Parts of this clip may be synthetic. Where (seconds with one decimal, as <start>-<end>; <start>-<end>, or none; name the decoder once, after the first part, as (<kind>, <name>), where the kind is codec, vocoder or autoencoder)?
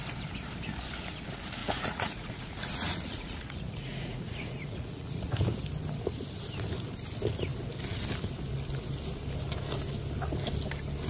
1.6-5.3 (vocoder, Vocos)